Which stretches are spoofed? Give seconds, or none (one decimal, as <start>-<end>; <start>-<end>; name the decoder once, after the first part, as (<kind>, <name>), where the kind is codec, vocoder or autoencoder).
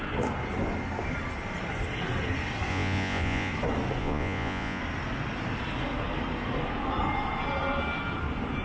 2.7-3.5 (vocoder, Vocos); 4.0-4.8